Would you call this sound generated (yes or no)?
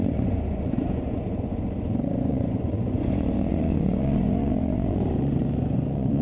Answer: yes